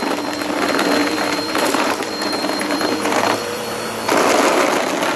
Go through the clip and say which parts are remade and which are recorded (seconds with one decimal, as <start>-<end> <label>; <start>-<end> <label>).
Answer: 0.0-1.0 recorded; 1.0-4.1 remade; 4.1-5.2 recorded